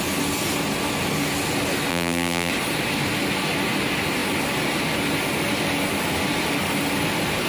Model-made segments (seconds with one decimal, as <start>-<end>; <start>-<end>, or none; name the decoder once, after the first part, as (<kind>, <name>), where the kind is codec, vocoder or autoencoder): 1.9-2.5 (vocoder, BigVGAN v2)